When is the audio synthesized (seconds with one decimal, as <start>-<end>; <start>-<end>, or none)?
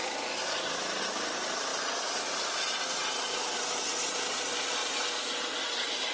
none